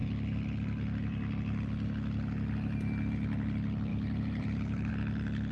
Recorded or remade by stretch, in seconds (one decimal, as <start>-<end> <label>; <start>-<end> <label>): 0.0-3.9 recorded; 3.9-4.9 remade; 4.9-5.5 recorded